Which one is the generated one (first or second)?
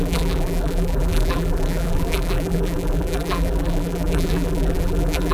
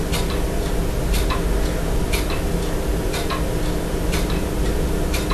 first